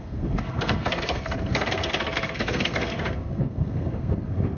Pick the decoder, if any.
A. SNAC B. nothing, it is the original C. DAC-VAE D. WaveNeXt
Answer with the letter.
A